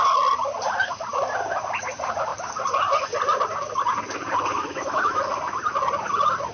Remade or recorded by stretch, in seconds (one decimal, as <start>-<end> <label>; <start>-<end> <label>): 0.0-4.6 recorded; 4.6-5.2 remade; 5.2-6.5 recorded

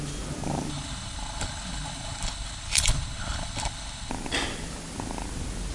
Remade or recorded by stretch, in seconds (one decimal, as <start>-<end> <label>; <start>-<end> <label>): 0.0-0.7 recorded; 0.7-4.1 remade; 4.1-5.7 recorded

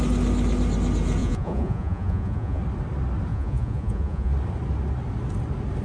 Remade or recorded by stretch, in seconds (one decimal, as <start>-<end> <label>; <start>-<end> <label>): 0.0-1.2 recorded; 1.2-2.6 remade; 2.6-3.3 recorded; 3.3-4.3 remade; 4.3-5.8 recorded

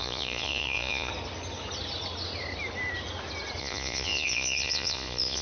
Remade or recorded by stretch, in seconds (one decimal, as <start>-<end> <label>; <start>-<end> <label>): 0.0-1.1 remade; 1.1-3.6 recorded; 3.6-5.4 remade

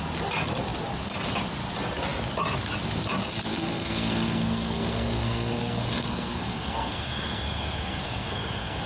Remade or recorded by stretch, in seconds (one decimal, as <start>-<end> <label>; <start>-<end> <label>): 0.0-3.5 recorded; 3.5-8.9 remade

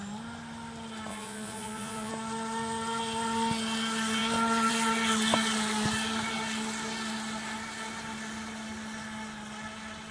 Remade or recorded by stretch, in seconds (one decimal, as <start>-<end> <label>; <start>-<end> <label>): 0.0-1.1 recorded; 1.1-2.1 remade; 2.1-10.1 recorded

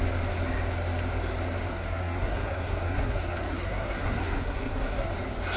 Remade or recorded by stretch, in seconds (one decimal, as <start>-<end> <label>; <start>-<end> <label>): 0.0-1.7 recorded; 1.7-5.1 remade; 5.1-5.6 recorded